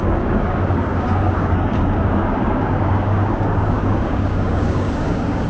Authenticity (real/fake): fake